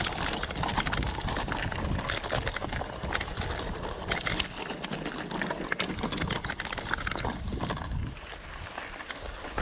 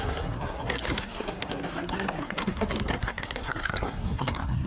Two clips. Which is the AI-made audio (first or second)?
second